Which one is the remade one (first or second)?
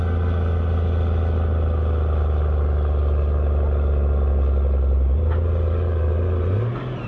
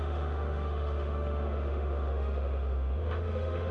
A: second